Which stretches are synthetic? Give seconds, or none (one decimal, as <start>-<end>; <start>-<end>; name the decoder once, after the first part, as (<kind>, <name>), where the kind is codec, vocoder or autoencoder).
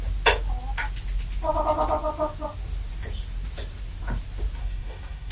4.6-5.3 (codec, DAC)